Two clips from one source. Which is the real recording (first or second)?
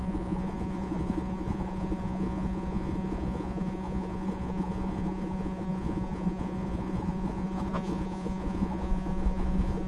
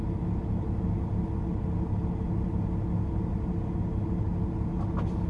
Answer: second